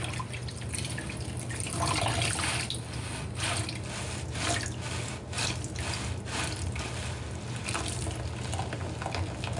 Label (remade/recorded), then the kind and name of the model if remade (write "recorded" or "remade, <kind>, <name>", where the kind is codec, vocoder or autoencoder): recorded